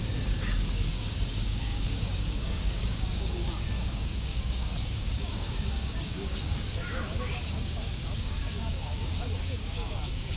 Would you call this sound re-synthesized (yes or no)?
yes